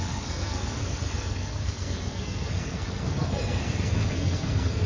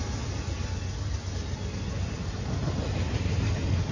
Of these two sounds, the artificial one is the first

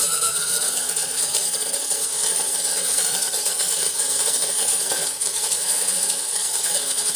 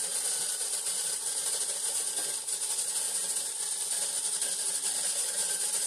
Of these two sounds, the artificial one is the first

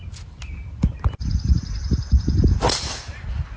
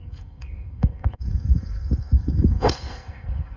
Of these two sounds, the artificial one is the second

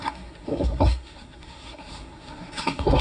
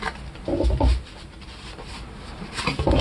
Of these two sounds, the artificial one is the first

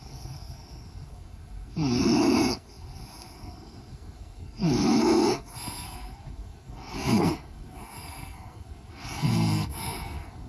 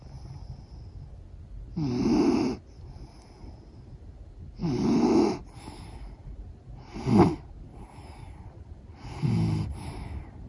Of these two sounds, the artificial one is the first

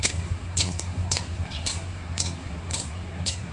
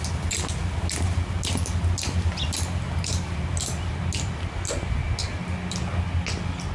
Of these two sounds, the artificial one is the first